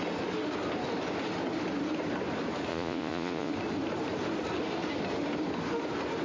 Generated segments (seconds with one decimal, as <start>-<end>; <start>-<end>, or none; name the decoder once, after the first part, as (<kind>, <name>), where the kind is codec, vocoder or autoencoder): 2.7-3.5 (vocoder, Vocos)